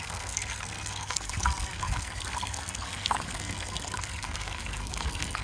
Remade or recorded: remade